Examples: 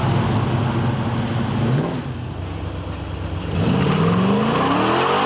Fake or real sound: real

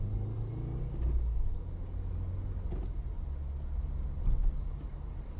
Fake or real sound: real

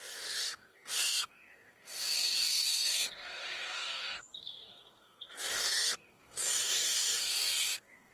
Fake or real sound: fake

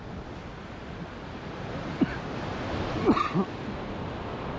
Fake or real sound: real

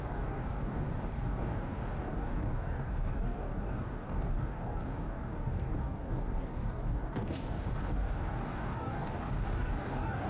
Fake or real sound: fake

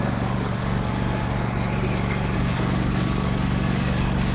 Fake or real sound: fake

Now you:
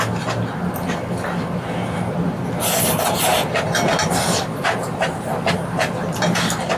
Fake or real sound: real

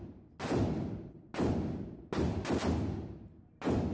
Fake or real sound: real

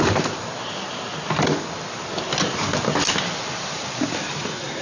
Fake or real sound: real